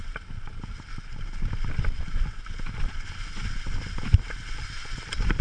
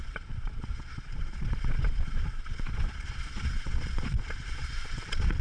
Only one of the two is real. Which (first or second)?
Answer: first